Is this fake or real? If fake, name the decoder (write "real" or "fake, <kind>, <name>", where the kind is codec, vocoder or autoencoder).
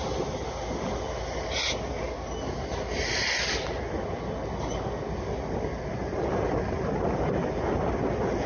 real